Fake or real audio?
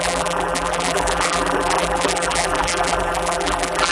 fake